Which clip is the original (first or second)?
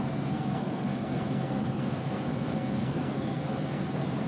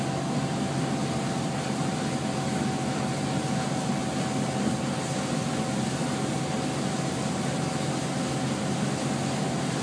second